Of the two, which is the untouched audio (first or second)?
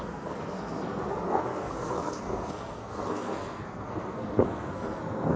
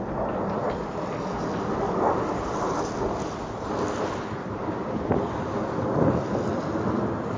second